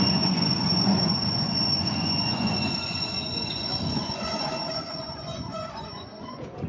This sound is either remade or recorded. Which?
remade